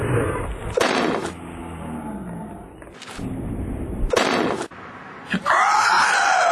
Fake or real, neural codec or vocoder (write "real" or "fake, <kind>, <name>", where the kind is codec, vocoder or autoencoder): real